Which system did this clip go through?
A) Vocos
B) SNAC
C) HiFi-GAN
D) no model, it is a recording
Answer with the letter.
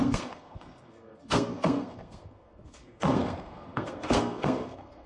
B